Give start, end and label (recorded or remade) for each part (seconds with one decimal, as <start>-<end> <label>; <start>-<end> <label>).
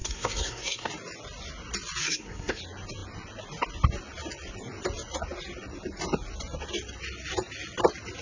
0.0-0.9 remade; 0.9-2.0 recorded; 2.0-2.6 remade; 2.6-8.2 recorded